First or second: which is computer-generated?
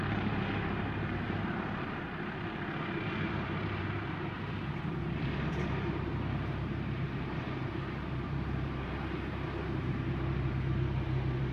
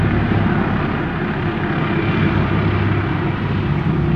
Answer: first